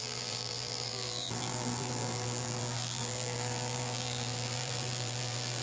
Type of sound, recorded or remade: remade